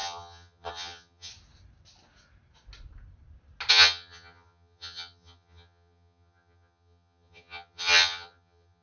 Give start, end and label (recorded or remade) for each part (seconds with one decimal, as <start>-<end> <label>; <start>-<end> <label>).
0.0-1.3 remade; 1.3-3.7 recorded; 3.7-8.8 remade